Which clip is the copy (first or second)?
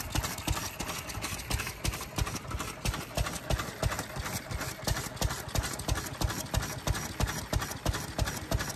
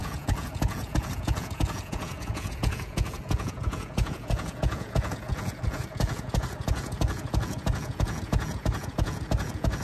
second